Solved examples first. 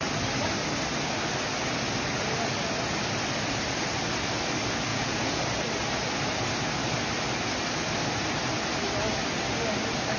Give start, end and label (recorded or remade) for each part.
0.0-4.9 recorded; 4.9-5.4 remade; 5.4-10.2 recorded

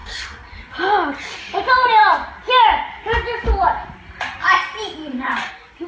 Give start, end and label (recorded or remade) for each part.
0.0-0.7 remade; 0.7-5.9 recorded

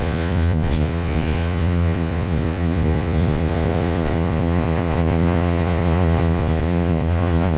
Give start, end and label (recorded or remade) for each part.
0.0-7.6 remade

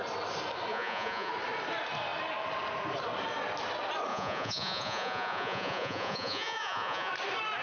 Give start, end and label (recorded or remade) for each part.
0.0-0.7 recorded; 0.7-1.3 remade; 1.3-4.1 recorded; 4.1-7.1 remade; 7.1-7.6 recorded

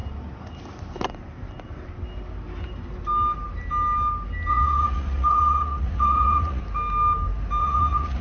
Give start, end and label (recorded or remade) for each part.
0.0-4.5 recorded; 4.5-6.6 remade; 6.6-7.6 recorded; 7.6-8.2 remade